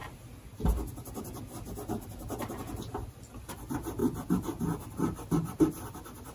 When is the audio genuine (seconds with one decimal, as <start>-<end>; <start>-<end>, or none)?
0.0-6.3